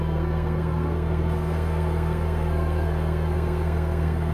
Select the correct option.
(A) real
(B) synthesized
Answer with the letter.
B